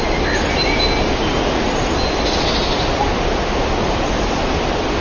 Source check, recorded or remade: recorded